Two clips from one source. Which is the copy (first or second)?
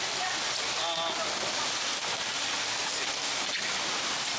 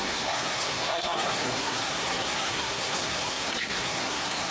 second